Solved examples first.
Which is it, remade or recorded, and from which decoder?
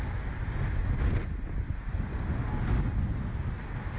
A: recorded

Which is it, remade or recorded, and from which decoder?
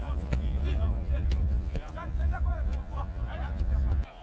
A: remade, vocoder, Vocos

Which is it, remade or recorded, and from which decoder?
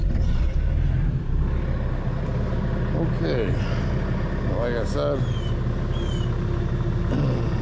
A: recorded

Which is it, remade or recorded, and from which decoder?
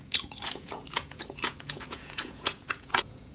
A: remade, vocoder, Vocos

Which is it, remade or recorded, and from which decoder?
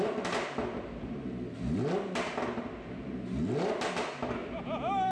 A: recorded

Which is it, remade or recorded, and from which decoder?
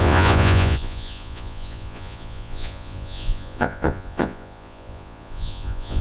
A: remade, vocoder, Vocos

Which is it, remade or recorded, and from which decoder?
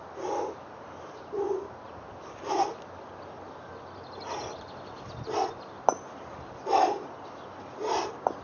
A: recorded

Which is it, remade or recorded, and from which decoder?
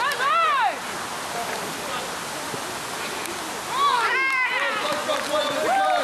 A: recorded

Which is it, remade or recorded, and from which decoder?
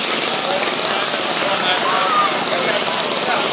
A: recorded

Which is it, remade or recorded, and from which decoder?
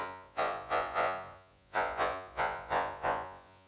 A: remade, vocoder, Vocos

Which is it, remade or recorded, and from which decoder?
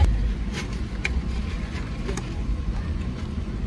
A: remade, vocoder, Vocos